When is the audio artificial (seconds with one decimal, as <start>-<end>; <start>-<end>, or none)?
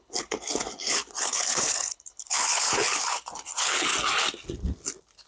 0.0-3.9